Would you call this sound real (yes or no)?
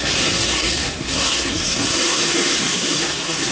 no